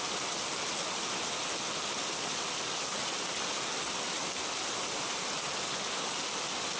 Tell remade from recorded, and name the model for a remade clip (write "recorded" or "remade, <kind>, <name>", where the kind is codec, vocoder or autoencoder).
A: recorded